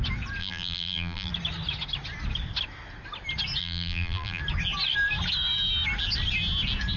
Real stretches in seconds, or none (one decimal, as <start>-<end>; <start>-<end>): 0.0-0.4; 1.3-3.6; 4.4-7.0